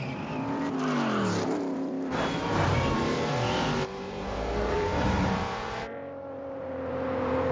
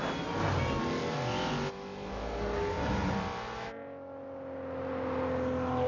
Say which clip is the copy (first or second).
first